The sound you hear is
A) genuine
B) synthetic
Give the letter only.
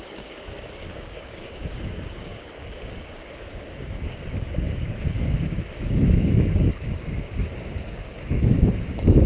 B